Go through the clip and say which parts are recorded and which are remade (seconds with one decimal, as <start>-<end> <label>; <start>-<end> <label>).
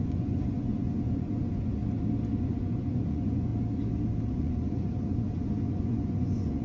0.0-1.8 remade; 1.8-2.4 recorded; 2.4-3.5 remade; 3.5-4.3 recorded; 4.3-6.6 remade